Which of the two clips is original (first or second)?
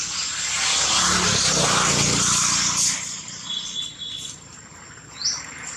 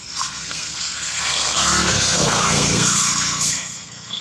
first